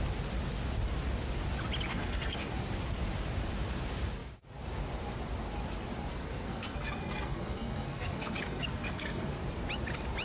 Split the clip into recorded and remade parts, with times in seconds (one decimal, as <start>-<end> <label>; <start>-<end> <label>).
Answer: 0.0-1.9 recorded; 1.9-2.5 remade; 2.5-6.1 recorded; 6.1-9.4 remade; 9.4-10.2 recorded